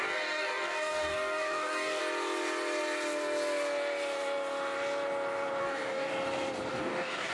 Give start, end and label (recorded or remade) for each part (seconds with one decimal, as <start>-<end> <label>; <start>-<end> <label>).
0.0-2.0 remade; 2.0-5.6 recorded; 5.6-6.1 remade; 6.1-6.7 recorded; 6.7-7.3 remade